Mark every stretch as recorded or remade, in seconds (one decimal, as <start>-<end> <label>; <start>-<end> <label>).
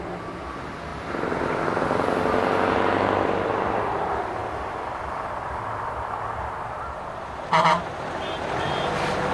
0.0-0.9 recorded; 0.9-1.8 remade; 1.8-9.3 recorded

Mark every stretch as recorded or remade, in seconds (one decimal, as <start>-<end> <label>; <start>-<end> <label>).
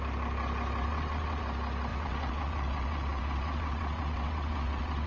0.0-0.9 recorded; 0.9-1.4 remade; 1.4-1.9 recorded; 1.9-5.1 remade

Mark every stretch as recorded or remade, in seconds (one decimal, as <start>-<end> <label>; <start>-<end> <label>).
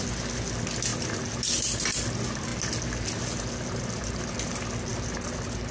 0.0-5.7 recorded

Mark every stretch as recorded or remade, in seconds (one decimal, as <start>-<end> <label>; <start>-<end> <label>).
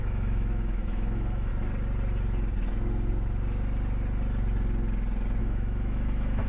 0.0-1.5 remade; 1.5-5.4 recorded; 5.4-6.5 remade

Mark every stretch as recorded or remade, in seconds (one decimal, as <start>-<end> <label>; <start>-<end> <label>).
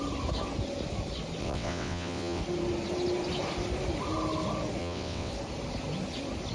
0.0-1.4 recorded; 1.4-2.4 remade; 2.4-4.8 recorded; 4.8-5.3 remade; 5.3-6.5 recorded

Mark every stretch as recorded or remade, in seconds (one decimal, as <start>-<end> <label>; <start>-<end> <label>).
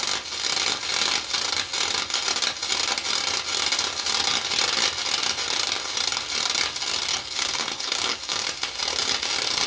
0.0-7.1 recorded; 7.1-8.5 remade; 8.5-9.7 recorded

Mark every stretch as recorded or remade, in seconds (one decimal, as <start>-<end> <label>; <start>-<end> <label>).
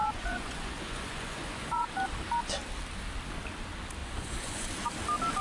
0.0-1.9 remade; 1.9-4.0 recorded; 4.0-4.7 remade; 4.7-5.4 recorded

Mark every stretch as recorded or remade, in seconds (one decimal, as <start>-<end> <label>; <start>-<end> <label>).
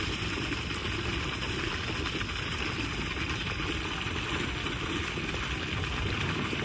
0.0-6.6 recorded